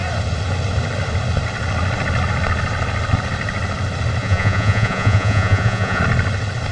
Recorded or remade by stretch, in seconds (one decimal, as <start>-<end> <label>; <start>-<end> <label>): 0.0-4.2 recorded; 4.2-6.0 remade; 6.0-6.7 recorded